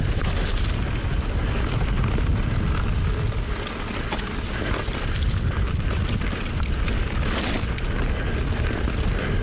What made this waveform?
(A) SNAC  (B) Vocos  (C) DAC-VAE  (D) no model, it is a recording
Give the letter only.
D